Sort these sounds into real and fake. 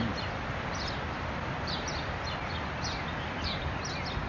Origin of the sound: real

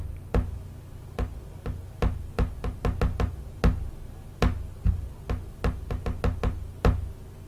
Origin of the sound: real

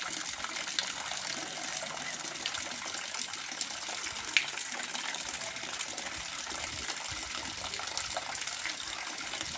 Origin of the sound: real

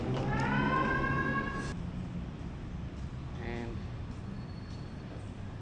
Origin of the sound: real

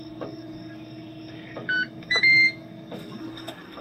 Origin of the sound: fake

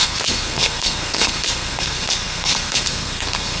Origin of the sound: fake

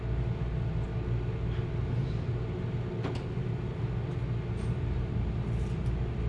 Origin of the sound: real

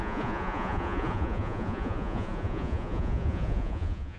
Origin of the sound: fake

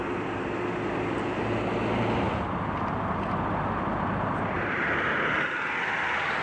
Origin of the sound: real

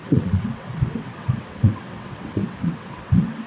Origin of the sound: fake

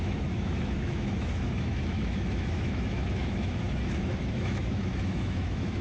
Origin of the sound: fake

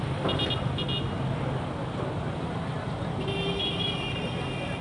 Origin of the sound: real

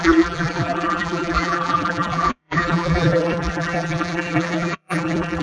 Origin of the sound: fake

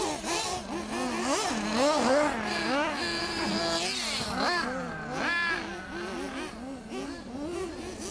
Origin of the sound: real